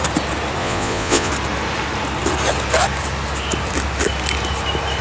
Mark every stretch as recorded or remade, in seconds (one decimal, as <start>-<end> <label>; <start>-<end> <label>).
0.0-0.6 recorded; 0.6-1.3 remade; 1.3-5.0 recorded